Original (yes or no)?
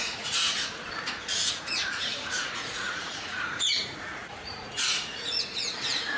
no